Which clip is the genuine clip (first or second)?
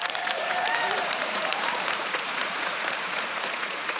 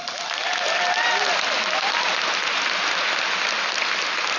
second